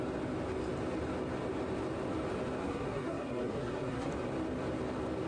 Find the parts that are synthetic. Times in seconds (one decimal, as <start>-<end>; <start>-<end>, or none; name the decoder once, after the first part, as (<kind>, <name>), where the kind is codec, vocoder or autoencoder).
2.6-4.1 (codec, SNAC)